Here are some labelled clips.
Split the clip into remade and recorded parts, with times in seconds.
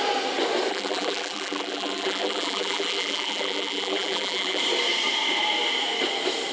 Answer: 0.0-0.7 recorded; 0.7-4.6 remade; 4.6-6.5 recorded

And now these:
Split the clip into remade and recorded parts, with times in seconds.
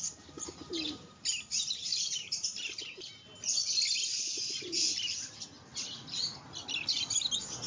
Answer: 0.0-7.7 recorded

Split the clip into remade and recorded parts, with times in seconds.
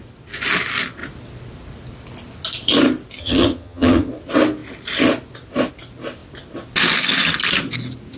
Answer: 0.0-3.2 recorded; 3.2-4.1 remade; 4.1-8.2 recorded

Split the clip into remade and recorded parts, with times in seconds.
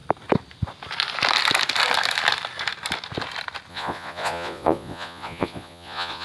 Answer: 0.0-3.7 recorded; 3.7-6.2 remade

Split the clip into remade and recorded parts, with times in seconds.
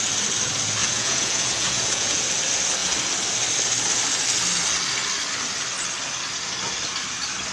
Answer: 0.0-0.8 recorded; 0.8-2.3 remade; 2.3-7.5 recorded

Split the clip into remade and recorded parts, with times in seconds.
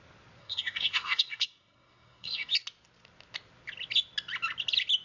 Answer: 0.0-0.4 recorded; 0.4-2.5 remade; 2.5-5.0 recorded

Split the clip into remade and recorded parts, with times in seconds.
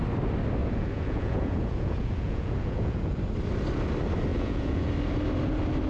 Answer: 0.0-0.6 recorded; 0.6-3.2 remade; 3.2-4.3 recorded; 4.3-4.9 remade; 4.9-5.9 recorded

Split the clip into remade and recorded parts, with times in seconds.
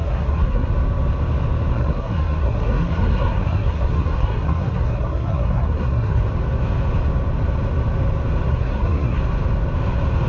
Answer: 0.0-0.7 remade; 0.7-1.7 recorded; 1.7-6.2 remade; 6.2-8.5 recorded; 8.5-9.2 remade; 9.2-10.3 recorded